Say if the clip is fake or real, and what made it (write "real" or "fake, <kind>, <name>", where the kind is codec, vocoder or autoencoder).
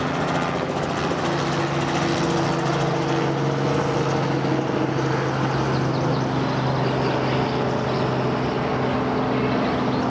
real